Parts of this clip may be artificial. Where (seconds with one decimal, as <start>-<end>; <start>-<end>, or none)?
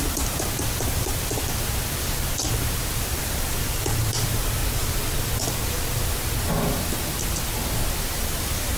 0.0-4.6; 8.0-8.8